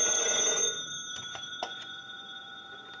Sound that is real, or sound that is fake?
fake